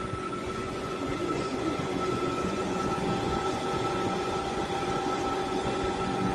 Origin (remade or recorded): remade